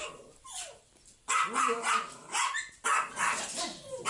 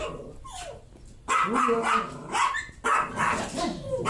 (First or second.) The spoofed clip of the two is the first